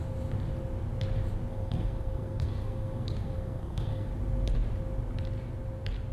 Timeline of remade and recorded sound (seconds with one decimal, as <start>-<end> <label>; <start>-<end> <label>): 0.0-1.5 recorded; 1.5-4.1 remade; 4.1-6.1 recorded